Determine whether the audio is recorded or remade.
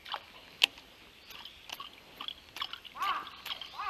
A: recorded